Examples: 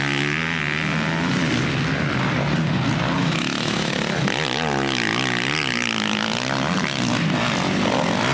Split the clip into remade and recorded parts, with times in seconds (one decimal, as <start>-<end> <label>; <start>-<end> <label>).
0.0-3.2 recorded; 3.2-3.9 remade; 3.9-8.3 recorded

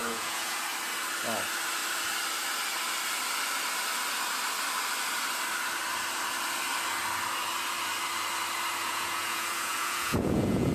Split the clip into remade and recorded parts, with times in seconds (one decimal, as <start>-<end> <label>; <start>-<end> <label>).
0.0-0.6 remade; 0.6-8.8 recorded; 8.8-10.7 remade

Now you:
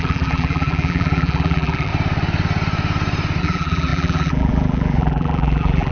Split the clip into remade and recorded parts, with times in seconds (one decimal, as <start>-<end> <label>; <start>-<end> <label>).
0.0-1.9 remade; 1.9-3.4 recorded; 3.4-5.9 remade